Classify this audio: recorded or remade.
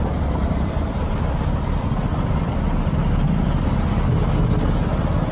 recorded